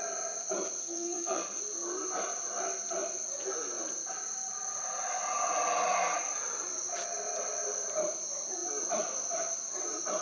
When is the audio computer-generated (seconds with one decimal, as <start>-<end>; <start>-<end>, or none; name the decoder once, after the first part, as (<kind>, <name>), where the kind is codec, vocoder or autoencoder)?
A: 0.8-1.6 (codec, SNAC)